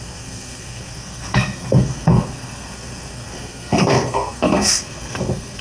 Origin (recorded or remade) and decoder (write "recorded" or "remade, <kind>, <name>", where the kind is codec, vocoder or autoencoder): remade, codec, SNAC